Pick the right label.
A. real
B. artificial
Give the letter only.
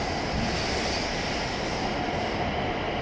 A